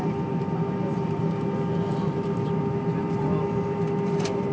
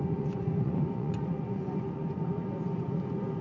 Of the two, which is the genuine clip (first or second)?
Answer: first